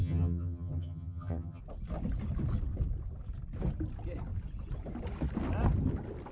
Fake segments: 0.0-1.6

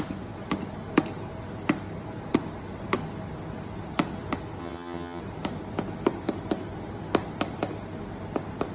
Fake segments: 4.6-5.2

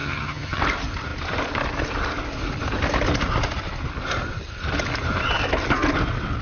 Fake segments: 0.0-0.6

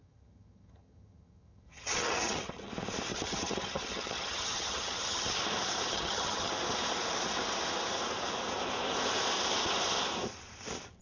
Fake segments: 0.0-2.7; 3.1-5.4; 5.9-6.5

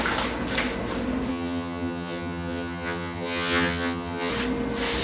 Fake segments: 1.3-4.3

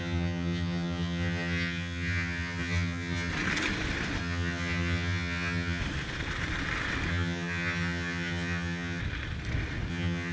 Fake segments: 0.0-3.3; 4.2-5.8; 7.1-9.0; 9.9-10.3